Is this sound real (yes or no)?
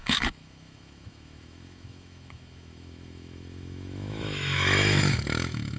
no